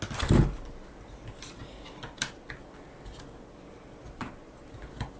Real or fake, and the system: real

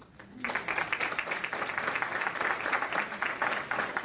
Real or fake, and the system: real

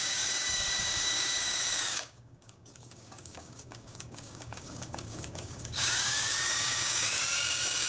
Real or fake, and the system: fake, codec, DAC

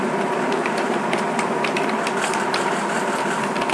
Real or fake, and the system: real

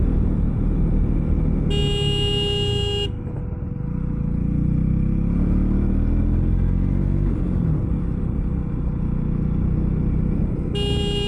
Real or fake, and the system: real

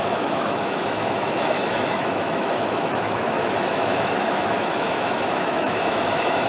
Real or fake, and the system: fake, autoencoder, DAC-VAE